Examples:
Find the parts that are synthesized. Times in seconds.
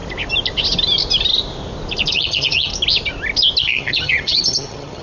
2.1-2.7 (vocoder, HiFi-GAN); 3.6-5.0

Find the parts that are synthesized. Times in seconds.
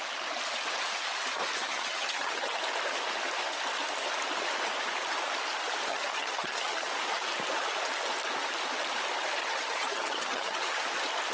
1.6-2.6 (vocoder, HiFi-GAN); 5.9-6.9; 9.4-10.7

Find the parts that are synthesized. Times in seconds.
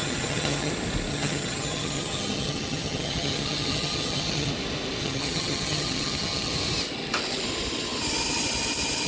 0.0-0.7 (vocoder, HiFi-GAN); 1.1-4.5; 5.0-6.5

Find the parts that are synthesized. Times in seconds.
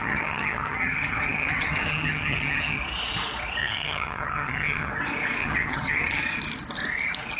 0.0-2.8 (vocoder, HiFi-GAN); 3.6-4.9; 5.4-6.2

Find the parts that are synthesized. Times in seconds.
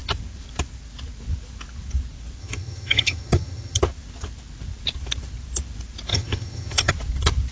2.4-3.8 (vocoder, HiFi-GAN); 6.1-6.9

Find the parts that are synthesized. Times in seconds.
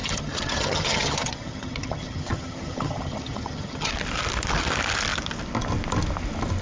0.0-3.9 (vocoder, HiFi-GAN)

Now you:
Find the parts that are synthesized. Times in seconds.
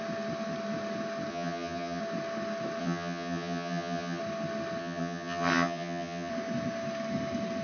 1.3-2.0 (vocoder, HiFi-GAN); 2.8-4.2; 4.8-6.3